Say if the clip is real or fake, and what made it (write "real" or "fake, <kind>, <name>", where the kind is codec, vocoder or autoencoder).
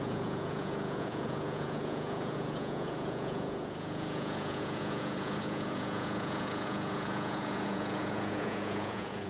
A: fake, vocoder, Vocos